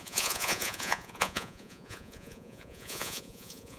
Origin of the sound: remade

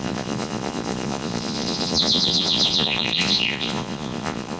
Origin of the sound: remade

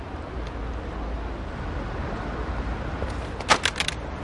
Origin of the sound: recorded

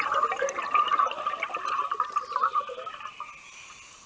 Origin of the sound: recorded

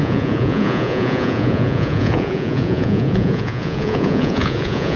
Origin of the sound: remade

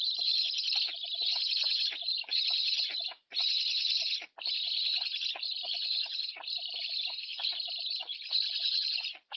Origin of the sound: recorded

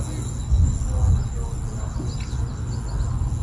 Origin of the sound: recorded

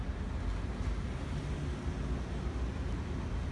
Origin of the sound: recorded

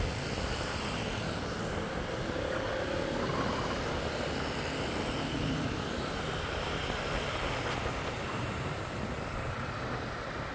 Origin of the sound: recorded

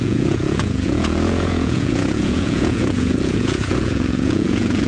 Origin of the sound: remade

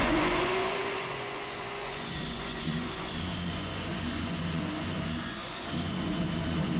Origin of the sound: remade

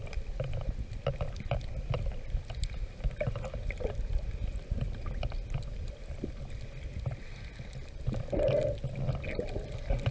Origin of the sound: recorded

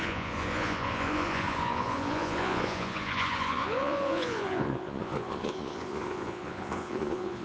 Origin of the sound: remade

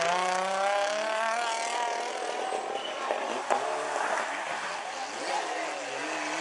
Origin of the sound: recorded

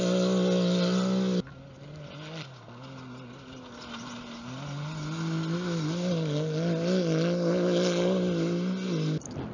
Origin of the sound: recorded